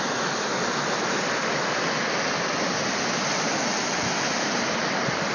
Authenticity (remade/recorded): recorded